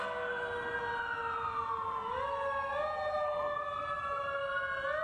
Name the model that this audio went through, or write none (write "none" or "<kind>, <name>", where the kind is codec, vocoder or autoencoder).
none